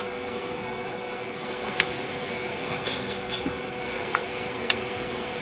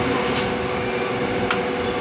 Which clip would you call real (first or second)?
second